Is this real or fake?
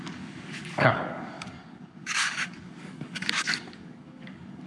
fake